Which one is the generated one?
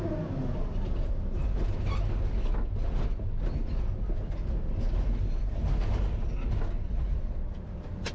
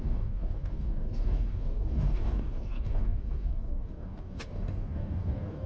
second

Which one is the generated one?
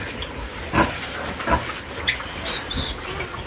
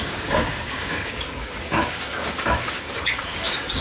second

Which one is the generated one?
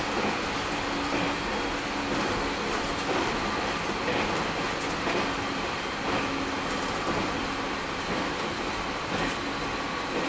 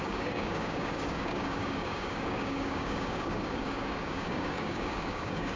second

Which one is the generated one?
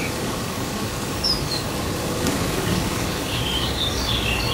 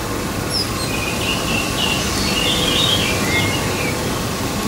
first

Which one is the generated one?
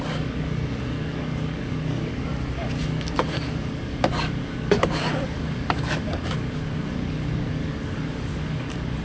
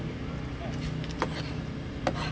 first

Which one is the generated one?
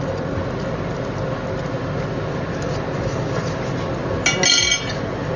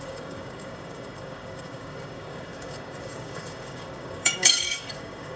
second